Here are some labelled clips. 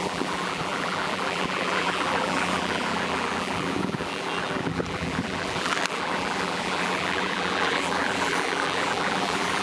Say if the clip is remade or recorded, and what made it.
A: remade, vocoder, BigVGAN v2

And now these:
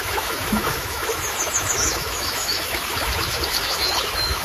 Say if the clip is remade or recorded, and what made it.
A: remade, autoencoder, DAC-VAE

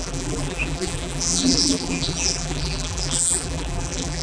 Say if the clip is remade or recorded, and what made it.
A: remade, vocoder, BigVGAN v2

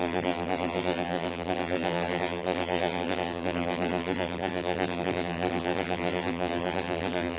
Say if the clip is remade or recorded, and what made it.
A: remade, vocoder, BigVGAN v2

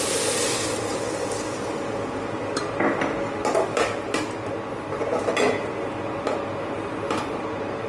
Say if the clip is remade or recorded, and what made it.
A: recorded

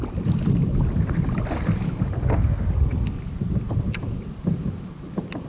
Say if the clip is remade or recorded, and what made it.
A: recorded